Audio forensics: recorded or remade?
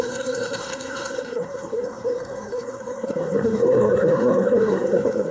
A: remade